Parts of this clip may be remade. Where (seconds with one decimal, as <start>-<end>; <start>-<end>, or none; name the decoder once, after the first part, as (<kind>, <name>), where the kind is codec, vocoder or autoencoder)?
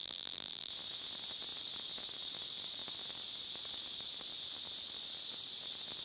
0.0-0.7 (vocoder, BigVGAN v2)